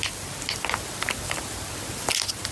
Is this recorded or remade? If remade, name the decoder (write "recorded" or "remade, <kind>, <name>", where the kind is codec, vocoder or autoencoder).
recorded